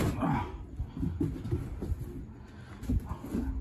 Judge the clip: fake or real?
real